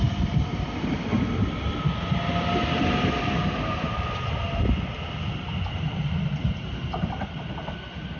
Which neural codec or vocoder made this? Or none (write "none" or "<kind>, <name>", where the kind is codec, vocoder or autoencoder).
none